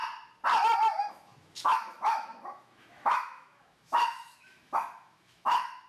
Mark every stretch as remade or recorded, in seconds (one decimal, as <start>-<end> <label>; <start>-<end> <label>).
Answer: 0.0-1.1 recorded; 1.1-5.9 remade